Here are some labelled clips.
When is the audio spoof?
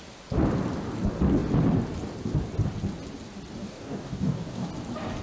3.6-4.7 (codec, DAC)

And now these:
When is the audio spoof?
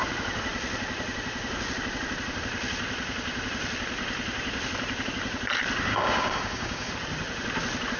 5.9-6.9 (codec, DAC)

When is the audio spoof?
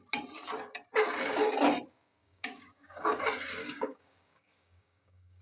2.2-3.2 (codec, DAC); 3.6-5.4